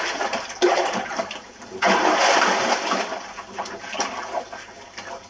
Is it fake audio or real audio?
real